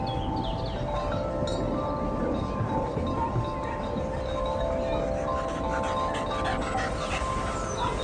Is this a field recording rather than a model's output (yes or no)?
yes